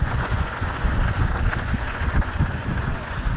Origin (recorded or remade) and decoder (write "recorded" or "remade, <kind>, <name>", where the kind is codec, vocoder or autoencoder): remade, vocoder, Vocos